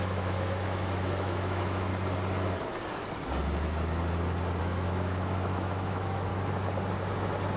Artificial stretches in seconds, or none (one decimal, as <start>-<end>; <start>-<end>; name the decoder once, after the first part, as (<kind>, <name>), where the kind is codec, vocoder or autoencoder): 0.0-1.9 (autoencoder, DAC-VAE); 4.6-6.3